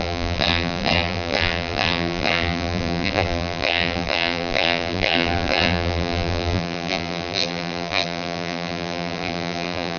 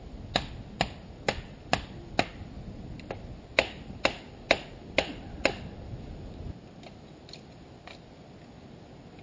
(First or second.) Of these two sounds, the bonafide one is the second